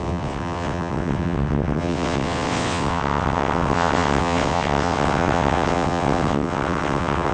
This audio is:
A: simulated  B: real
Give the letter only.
A